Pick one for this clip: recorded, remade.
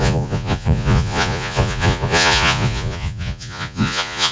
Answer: remade